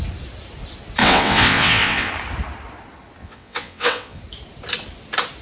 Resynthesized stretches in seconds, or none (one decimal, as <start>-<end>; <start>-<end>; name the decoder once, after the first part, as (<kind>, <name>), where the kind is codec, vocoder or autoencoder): 1.0-2.1 (vocoder, WaveNeXt); 3.2-4.2